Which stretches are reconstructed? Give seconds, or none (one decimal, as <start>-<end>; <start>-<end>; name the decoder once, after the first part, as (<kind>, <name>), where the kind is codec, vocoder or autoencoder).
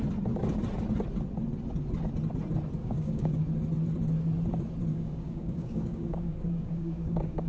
2.8-3.4 (codec, DAC); 4.9-7.5